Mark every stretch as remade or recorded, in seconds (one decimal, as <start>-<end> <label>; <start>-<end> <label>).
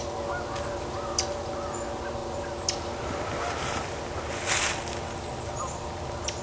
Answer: 0.0-6.4 recorded